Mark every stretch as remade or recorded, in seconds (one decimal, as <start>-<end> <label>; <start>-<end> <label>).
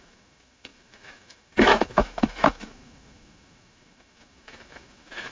0.0-5.3 remade